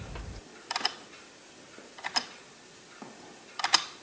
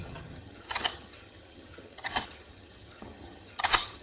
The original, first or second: first